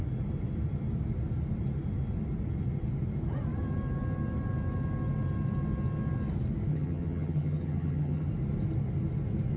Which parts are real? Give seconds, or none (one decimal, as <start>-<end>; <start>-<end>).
0.0-6.7; 8.3-9.6